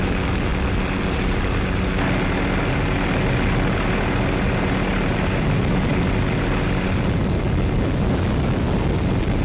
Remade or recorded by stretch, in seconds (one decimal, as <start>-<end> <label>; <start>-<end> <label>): 0.0-0.5 recorded; 0.5-1.6 remade; 1.6-4.9 recorded; 4.9-6.2 remade; 6.2-9.4 recorded